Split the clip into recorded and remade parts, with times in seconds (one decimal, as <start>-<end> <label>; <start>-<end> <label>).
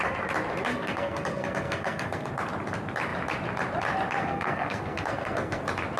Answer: 0.0-0.7 recorded; 0.7-2.3 remade; 2.3-4.2 recorded; 4.2-5.6 remade; 5.6-6.0 recorded